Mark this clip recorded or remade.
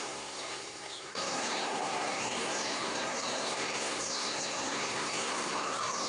remade